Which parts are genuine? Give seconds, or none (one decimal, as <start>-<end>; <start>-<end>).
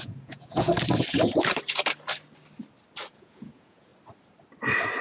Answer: 0.7-3.1; 3.9-5.0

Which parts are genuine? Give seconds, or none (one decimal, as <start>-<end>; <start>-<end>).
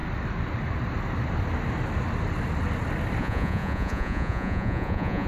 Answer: 0.0-3.2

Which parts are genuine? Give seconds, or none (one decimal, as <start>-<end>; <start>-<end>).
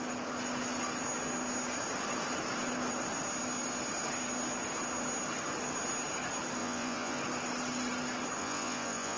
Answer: 0.0-6.6; 7.2-8.4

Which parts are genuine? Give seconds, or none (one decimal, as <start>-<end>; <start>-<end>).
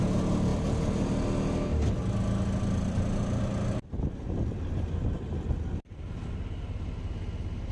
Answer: 0.0-7.7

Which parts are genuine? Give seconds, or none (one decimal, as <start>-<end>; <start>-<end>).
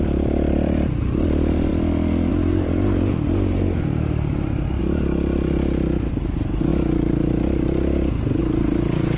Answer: 1.7-2.3; 4.8-6.1; 6.7-8.4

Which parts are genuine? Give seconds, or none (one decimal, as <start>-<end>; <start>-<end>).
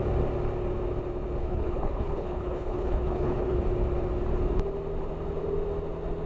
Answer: 0.0-1.4; 3.6-6.3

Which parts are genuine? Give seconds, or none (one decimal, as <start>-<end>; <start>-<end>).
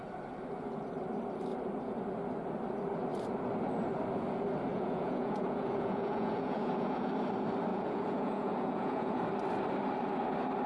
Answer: 0.0-4.7; 7.1-7.7; 9.2-10.7